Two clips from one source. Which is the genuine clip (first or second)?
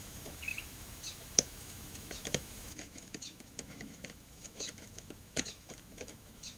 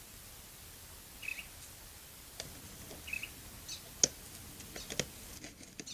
second